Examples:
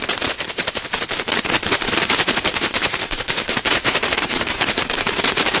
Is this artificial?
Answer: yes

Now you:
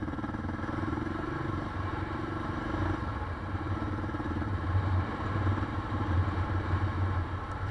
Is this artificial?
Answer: yes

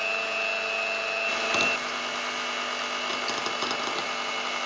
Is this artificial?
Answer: no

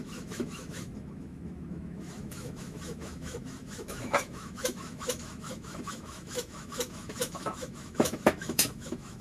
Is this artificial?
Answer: yes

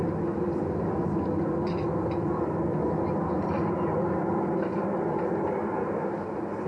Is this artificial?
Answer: no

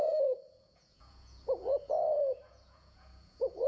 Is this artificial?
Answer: yes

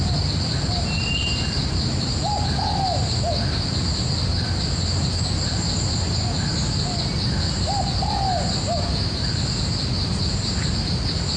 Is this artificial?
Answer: no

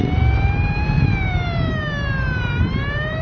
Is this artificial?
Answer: yes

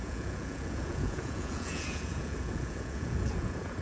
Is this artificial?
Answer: yes